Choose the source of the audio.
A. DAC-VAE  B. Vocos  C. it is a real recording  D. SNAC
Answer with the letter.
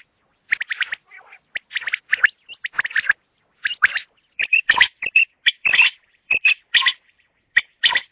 C